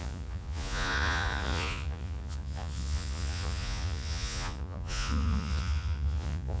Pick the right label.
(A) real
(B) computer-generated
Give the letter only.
B